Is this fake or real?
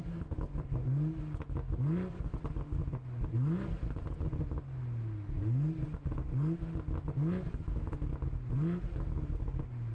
real